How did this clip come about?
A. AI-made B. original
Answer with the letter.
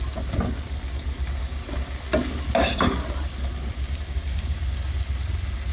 B